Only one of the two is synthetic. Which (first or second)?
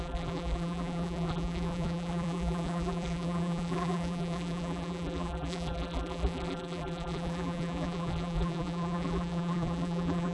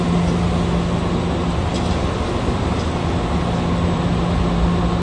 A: first